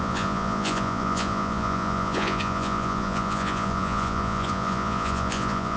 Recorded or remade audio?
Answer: remade